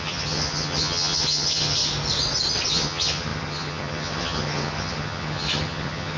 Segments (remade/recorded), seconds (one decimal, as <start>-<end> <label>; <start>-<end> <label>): 0.0-1.8 remade; 1.8-2.7 recorded; 2.7-6.2 remade